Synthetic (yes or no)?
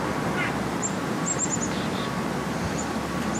no